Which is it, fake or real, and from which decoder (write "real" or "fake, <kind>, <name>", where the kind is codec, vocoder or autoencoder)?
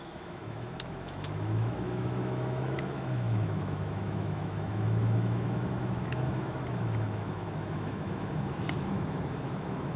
fake, autoencoder, DAC-VAE